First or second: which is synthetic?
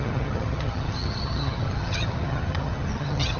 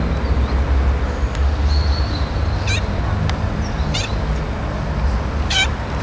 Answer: first